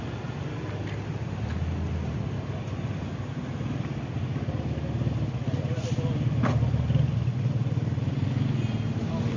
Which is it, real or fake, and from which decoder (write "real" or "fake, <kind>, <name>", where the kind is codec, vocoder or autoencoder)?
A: real